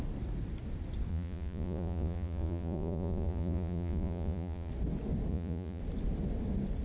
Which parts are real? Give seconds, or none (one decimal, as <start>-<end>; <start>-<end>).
0.0-1.1; 4.7-5.3; 5.8-6.8